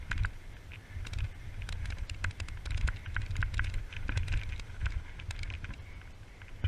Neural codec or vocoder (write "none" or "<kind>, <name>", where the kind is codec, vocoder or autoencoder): none